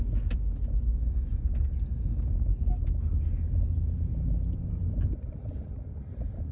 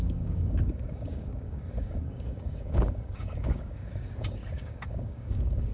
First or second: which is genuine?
first